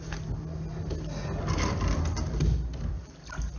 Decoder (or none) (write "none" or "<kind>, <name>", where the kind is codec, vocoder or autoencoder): none